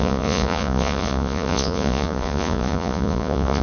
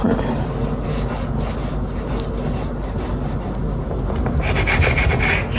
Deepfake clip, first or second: first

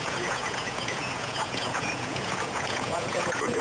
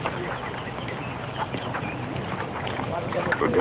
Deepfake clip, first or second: first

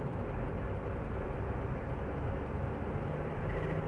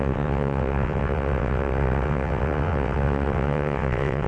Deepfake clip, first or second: second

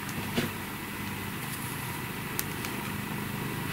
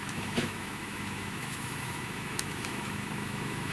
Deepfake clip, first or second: second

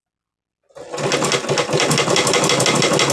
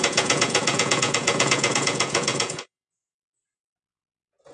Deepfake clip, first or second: second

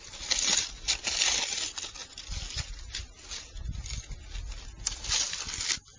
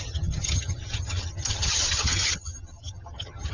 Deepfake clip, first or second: second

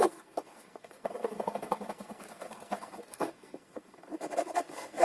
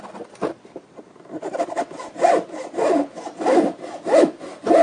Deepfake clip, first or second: first